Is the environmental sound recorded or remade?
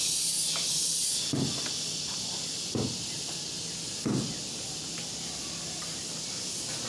recorded